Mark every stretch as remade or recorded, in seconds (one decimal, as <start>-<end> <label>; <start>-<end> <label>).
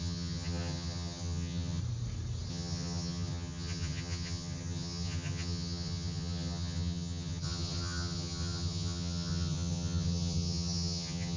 0.0-1.8 remade; 1.8-2.5 recorded; 2.5-11.4 remade